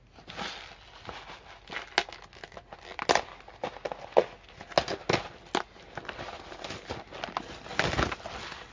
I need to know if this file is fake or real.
real